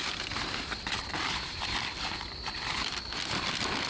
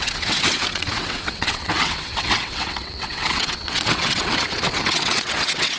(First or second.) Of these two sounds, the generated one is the second